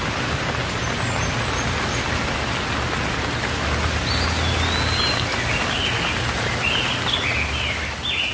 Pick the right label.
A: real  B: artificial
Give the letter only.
A